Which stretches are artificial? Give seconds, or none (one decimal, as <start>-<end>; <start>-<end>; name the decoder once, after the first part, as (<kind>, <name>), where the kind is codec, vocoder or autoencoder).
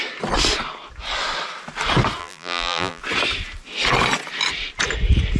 2.2-3.0 (vocoder, BigVGAN v2)